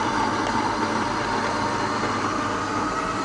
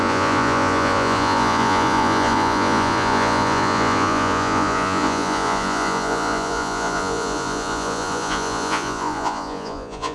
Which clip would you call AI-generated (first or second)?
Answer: second